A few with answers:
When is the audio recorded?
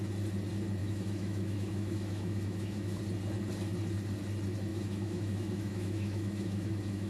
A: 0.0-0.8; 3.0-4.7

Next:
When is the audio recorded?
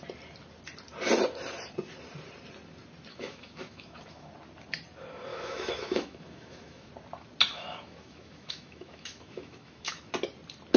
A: 0.0-3.1; 4.3-5.3; 6.9-7.5; 10.1-10.8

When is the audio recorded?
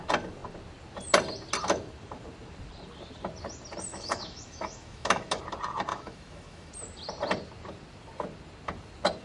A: 0.0-3.9; 5.4-5.9; 6.7-9.2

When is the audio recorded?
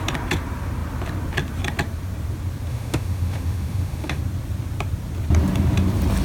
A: 0.0-2.7; 4.2-6.2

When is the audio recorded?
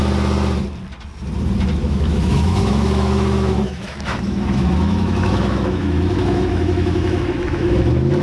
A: 0.0-1.8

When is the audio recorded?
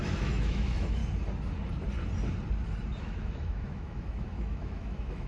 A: 1.0-3.0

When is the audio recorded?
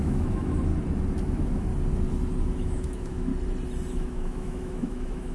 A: 0.7-1.2; 1.7-2.4; 3.3-3.9